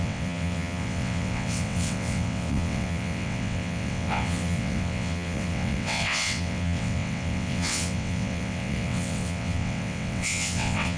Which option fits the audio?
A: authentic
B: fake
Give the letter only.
B